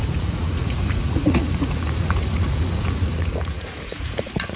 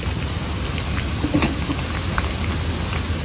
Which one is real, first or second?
second